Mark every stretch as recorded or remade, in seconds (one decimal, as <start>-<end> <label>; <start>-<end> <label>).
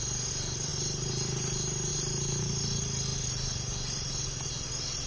0.0-5.1 recorded